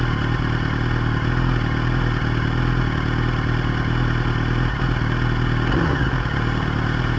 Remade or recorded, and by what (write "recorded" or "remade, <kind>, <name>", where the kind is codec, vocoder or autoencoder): recorded